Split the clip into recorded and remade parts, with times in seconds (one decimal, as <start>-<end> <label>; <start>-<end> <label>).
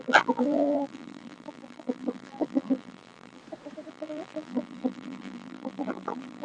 0.0-3.4 remade; 3.4-3.9 recorded; 3.9-6.4 remade